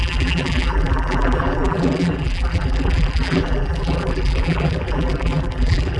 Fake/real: fake